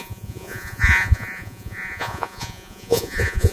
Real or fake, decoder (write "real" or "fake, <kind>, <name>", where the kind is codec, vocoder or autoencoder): fake, vocoder, Vocos